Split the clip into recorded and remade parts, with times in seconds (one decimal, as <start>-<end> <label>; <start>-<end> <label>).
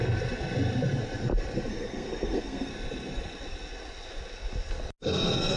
0.0-1.7 recorded; 1.7-2.7 remade; 2.7-5.0 recorded; 5.0-5.6 remade